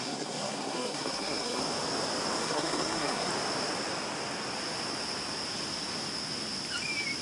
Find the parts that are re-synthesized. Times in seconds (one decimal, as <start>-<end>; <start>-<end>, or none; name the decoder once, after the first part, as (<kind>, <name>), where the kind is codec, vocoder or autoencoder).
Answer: 0.0-1.6 (codec, SNAC); 2.4-3.3